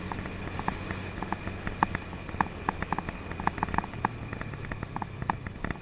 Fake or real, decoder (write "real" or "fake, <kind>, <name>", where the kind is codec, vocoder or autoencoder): real